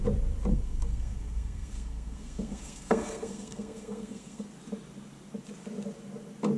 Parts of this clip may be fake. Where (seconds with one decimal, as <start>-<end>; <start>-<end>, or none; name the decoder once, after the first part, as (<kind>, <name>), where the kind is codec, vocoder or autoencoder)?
0.5-4.5 (codec, SNAC)